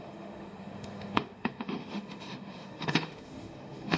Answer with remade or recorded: remade